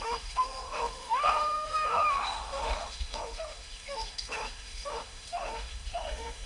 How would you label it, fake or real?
fake